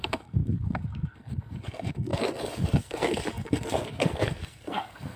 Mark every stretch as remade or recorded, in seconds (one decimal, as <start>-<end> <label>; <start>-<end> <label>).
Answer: 0.0-5.2 remade